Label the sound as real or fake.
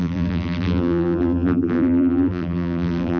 fake